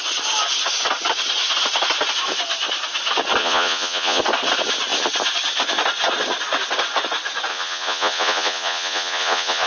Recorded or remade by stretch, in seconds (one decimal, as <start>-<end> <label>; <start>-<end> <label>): 0.0-3.4 recorded; 3.4-4.2 remade; 4.2-7.5 recorded; 7.5-9.7 remade